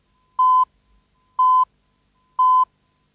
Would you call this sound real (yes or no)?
yes